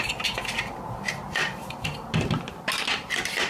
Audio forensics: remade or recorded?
recorded